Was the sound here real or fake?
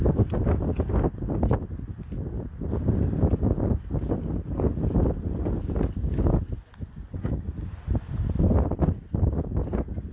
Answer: real